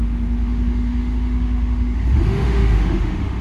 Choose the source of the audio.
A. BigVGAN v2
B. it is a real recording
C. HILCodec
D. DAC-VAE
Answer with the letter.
D